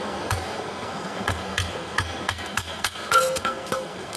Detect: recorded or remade remade